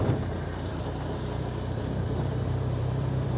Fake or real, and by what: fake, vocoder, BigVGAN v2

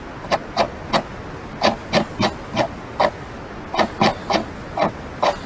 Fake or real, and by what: real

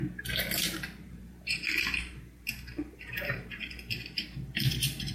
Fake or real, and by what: fake, vocoder, BigVGAN v2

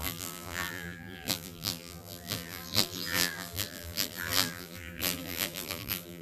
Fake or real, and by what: fake, vocoder, BigVGAN v2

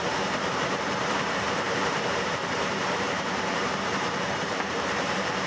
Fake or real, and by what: fake, vocoder, BigVGAN v2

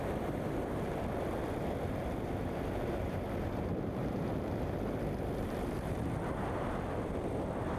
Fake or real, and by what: fake, vocoder, BigVGAN v2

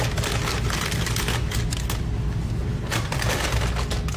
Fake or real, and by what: real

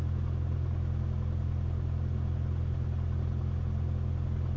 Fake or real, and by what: real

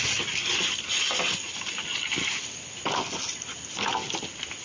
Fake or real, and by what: real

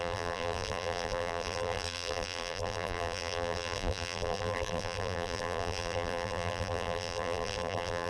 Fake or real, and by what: fake, vocoder, BigVGAN v2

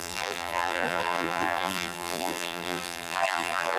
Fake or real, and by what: fake, vocoder, BigVGAN v2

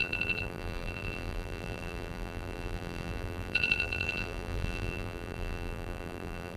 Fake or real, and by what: fake, vocoder, BigVGAN v2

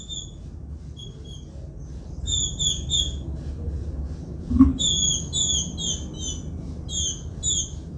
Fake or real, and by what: real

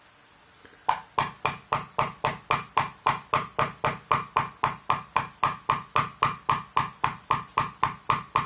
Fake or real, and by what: real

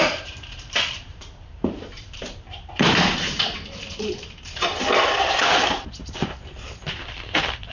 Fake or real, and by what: fake, vocoder, BigVGAN v2